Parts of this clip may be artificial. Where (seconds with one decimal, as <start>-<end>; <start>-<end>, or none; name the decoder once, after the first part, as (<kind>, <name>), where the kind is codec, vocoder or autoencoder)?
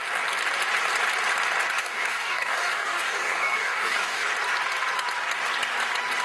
1.8-4.2 (codec, DAC)